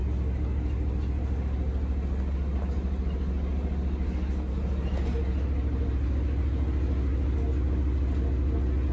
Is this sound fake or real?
real